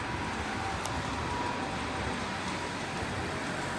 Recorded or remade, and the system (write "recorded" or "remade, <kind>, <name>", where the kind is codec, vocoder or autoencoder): recorded